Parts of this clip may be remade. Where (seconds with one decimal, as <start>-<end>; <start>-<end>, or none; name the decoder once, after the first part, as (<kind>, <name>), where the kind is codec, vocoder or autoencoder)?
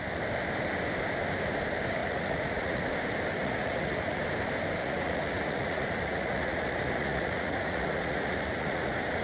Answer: 2.0-2.8 (vocoder, Vocos); 3.4-4.2; 4.8-9.2